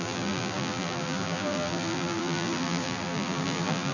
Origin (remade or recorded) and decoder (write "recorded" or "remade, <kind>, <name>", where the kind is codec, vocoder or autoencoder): remade, vocoder, BigVGAN v2